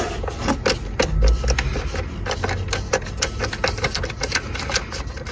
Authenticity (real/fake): real